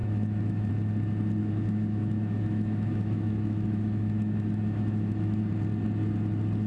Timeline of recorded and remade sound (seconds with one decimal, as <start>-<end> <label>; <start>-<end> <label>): 0.0-0.7 remade; 0.7-1.4 recorded; 1.4-5.4 remade; 5.4-6.7 recorded